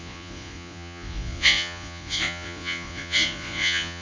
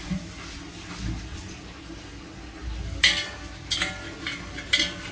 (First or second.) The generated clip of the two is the first